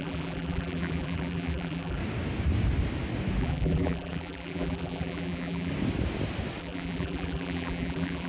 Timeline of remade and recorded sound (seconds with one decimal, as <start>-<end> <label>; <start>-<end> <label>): 0.0-2.0 remade; 2.0-3.4 recorded; 3.4-5.7 remade; 5.7-6.6 recorded; 6.6-8.3 remade